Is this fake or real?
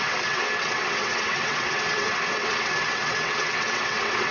fake